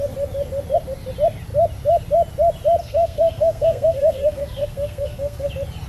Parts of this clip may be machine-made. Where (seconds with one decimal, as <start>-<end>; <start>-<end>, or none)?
2.8-5.5